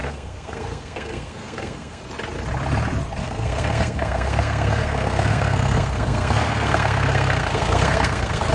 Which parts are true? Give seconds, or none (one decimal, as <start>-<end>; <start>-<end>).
2.0-3.2